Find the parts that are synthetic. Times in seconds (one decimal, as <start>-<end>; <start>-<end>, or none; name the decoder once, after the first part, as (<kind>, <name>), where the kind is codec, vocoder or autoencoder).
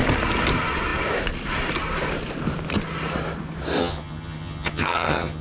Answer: 3.8-5.4 (vocoder, HiFi-GAN)